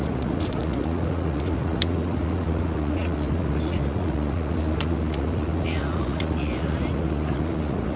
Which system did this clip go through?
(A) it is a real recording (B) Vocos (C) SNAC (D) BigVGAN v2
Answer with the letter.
B